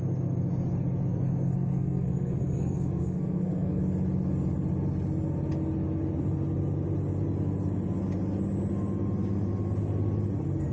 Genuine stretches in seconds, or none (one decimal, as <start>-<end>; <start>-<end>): 0.0-1.1; 3.8-10.7